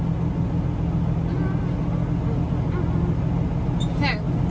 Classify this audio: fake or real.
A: real